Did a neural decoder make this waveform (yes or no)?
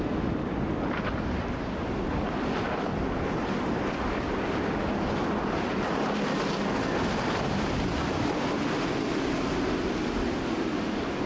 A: no